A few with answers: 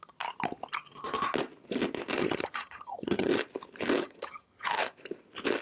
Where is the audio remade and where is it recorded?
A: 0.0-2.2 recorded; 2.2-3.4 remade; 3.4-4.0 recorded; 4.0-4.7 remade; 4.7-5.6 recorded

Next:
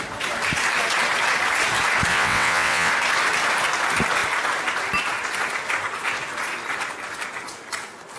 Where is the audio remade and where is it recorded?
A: 0.0-2.1 recorded; 2.1-2.9 remade; 2.9-8.2 recorded

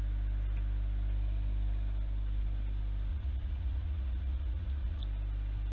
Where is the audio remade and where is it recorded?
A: 0.0-3.1 recorded; 3.1-5.0 remade; 5.0-5.7 recorded

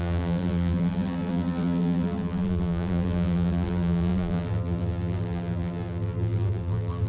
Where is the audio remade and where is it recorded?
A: 0.0-7.1 remade

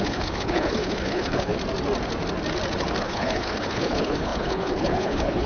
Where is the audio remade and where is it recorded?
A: 0.0-1.5 remade; 1.5-3.0 recorded; 3.0-5.5 remade

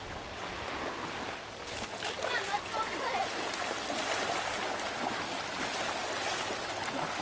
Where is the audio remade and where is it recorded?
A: 0.0-7.2 recorded